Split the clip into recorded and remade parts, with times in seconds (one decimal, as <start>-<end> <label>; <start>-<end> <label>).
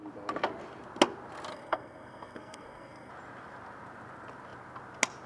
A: 0.0-1.5 recorded; 1.5-3.1 remade; 3.1-5.3 recorded